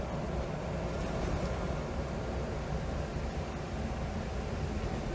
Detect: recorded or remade recorded